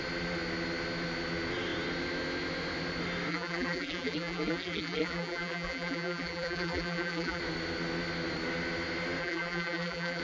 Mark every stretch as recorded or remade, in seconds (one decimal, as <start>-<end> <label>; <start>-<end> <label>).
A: 0.0-3.3 recorded; 3.3-7.4 remade; 7.4-9.2 recorded; 9.2-10.2 remade

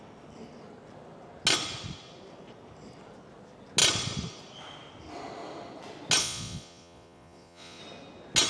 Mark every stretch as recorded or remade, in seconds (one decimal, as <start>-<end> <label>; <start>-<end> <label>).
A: 0.0-6.2 recorded; 6.2-7.8 remade; 7.8-8.5 recorded

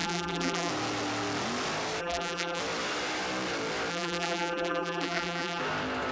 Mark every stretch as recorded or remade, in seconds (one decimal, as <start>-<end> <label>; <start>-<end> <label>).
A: 0.0-0.7 remade; 0.7-2.0 recorded; 2.0-2.6 remade; 2.6-3.9 recorded; 3.9-5.6 remade; 5.6-6.1 recorded

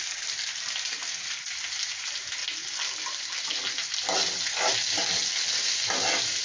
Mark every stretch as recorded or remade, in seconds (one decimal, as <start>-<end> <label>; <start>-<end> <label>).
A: 0.0-6.4 recorded